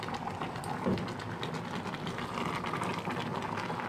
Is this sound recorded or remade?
recorded